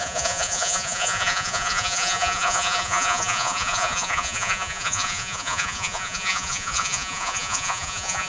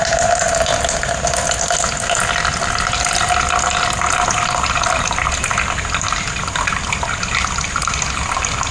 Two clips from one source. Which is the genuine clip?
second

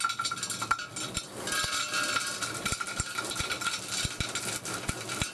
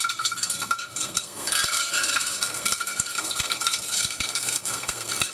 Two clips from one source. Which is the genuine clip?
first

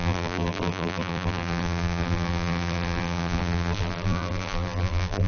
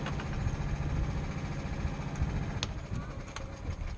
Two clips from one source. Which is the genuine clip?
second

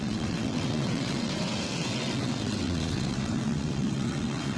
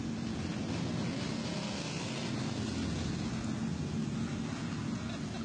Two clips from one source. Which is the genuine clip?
second